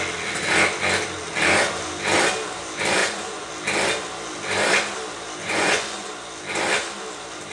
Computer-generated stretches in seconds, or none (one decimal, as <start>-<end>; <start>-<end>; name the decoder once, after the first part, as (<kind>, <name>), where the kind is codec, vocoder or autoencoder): 3.0-3.5 (vocoder, Vocos); 5.4-6.1